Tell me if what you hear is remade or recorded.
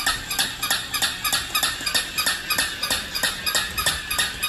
recorded